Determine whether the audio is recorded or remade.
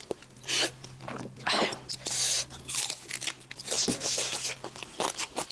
recorded